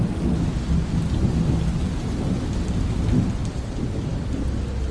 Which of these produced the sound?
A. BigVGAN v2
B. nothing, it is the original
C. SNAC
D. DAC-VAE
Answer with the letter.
B